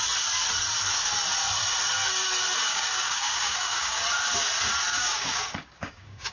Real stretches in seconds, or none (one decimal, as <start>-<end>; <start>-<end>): 0.0-2.7; 4.0-4.9